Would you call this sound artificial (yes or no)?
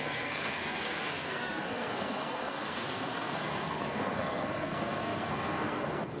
yes